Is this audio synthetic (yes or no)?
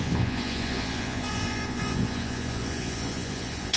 yes